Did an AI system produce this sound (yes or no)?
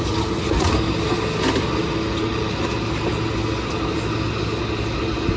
no